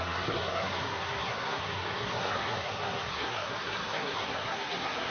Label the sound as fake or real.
fake